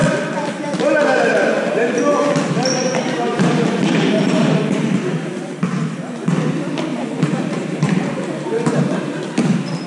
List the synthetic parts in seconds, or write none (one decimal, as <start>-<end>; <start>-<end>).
3.3-4.8; 6.9-9.3